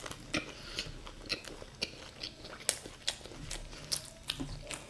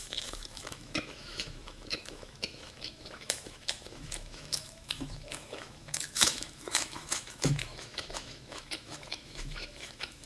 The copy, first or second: second